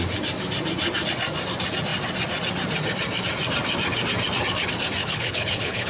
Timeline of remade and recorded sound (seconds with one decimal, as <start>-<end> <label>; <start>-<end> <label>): 0.0-5.0 recorded; 5.0-5.9 remade